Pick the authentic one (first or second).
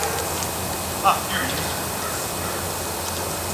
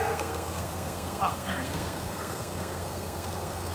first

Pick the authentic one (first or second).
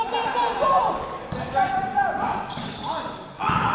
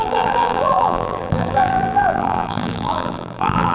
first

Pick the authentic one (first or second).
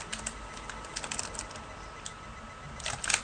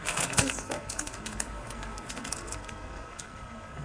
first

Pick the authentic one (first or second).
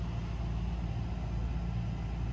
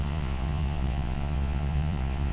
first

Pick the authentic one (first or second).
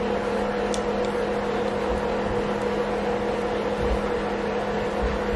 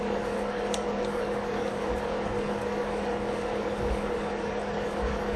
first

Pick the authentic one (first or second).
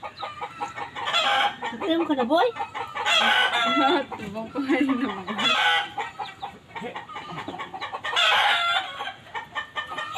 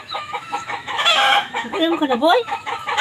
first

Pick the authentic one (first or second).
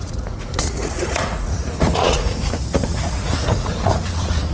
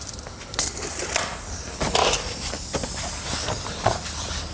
second